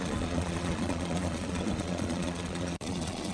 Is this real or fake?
fake